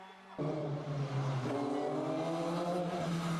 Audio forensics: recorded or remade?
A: recorded